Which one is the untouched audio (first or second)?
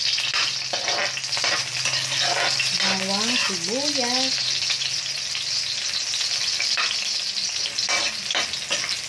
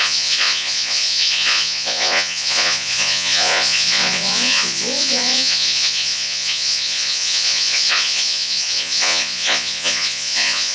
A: first